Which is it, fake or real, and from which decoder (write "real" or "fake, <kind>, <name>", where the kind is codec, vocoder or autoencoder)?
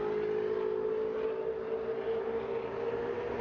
real